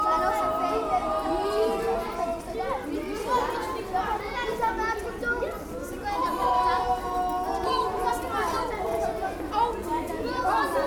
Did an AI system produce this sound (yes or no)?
no